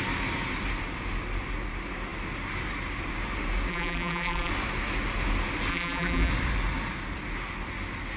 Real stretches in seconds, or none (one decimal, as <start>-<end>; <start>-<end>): 0.0-3.7; 4.5-5.7; 6.3-8.2